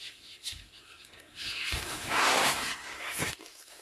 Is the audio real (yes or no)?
no